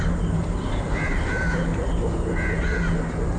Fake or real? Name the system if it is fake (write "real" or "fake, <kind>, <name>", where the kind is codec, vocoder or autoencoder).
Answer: real